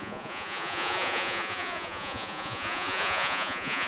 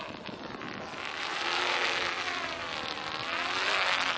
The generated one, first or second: first